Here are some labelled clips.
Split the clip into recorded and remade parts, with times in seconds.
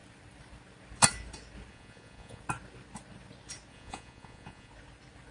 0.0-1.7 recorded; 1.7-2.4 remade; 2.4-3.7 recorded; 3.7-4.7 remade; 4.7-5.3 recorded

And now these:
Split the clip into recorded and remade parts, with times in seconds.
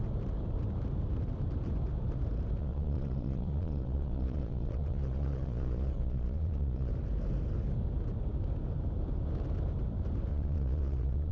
0.0-2.6 recorded; 2.6-6.9 remade; 6.9-10.3 recorded; 10.3-11.3 remade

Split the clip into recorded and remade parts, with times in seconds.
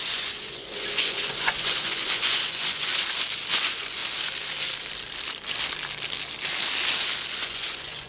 0.0-2.9 remade; 2.9-3.5 recorded; 3.5-4.0 remade; 4.0-7.3 recorded; 7.3-8.1 remade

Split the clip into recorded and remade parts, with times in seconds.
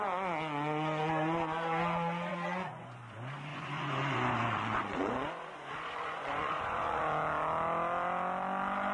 0.0-2.3 recorded; 2.3-3.0 remade; 3.0-3.5 recorded; 3.5-7.0 remade; 7.0-8.9 recorded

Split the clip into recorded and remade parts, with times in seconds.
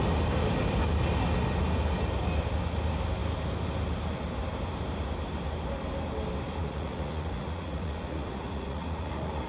0.0-6.6 recorded; 6.6-9.5 remade